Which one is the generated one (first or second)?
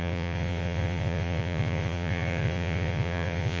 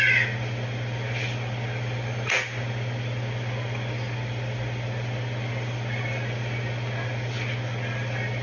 first